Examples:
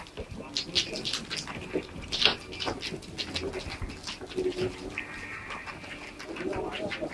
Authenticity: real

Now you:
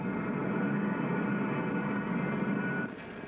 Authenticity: real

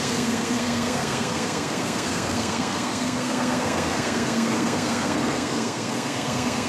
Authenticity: fake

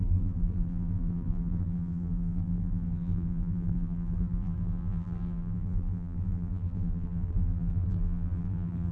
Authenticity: fake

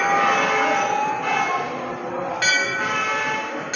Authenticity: real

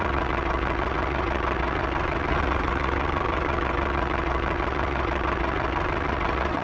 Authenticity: fake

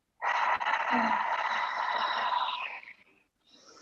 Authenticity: real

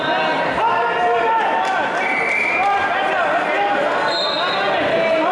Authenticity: real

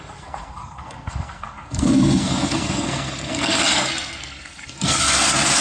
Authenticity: fake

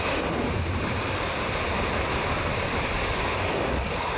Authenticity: real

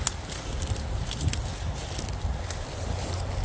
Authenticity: real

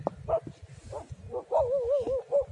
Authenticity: real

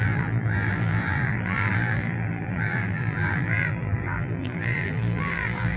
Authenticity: fake